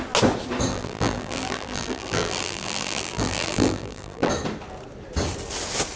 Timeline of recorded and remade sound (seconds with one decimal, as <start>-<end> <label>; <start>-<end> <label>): 0.0-0.7 recorded; 0.7-4.3 remade; 4.3-6.0 recorded